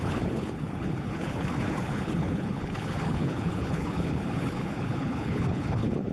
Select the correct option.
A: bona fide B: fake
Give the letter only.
B